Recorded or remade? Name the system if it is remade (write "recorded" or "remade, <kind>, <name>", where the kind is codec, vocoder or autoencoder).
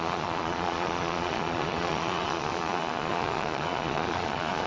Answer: remade, vocoder, Vocos